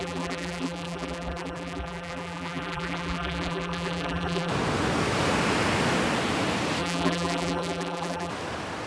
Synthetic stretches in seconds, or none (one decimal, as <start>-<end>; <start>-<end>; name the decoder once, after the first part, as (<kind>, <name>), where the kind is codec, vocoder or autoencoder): 0.0-4.5 (vocoder, BigVGAN v2); 6.8-8.3